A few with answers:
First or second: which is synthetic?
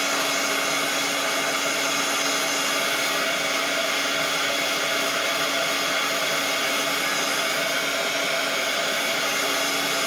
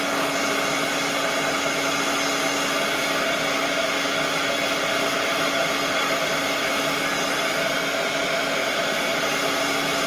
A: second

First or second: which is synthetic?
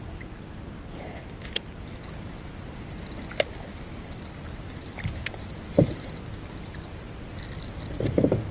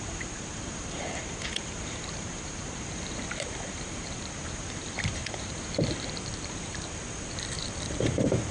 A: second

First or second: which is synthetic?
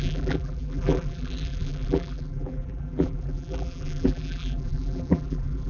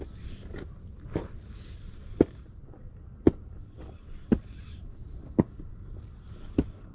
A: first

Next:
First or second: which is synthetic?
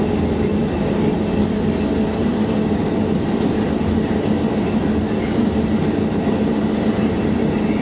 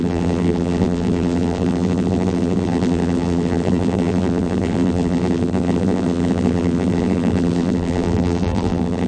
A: second